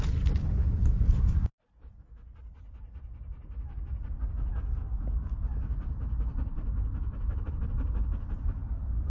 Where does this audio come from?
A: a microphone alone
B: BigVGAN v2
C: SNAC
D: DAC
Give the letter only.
A